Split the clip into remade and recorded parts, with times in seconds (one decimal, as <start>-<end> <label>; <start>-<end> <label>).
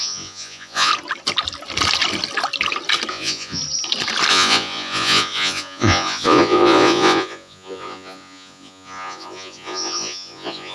0.0-0.9 remade; 0.9-3.1 recorded; 3.1-3.6 remade; 3.6-4.3 recorded; 4.3-10.7 remade